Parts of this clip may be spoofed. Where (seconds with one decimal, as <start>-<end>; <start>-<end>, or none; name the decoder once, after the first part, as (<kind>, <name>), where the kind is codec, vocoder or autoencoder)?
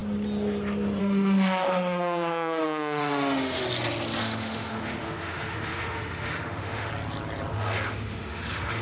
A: 1.0-3.6 (autoencoder, DAC-VAE); 4.2-6.9; 7.5-8.8